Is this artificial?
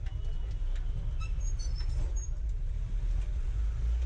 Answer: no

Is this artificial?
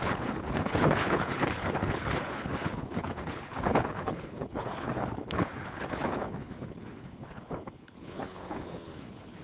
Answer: yes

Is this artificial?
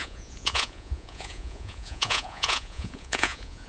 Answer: yes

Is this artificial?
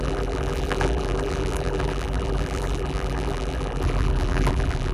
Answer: yes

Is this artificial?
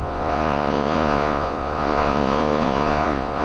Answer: yes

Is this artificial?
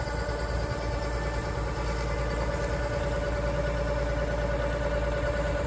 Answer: no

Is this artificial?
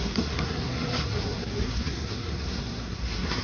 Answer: yes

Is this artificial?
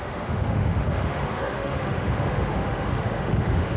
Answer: yes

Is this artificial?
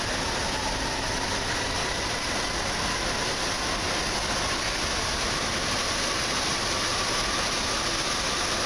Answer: no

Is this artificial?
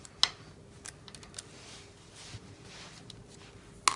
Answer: no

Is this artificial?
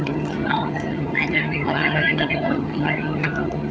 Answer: yes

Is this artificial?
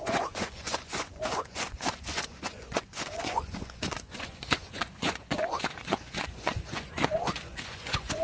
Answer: yes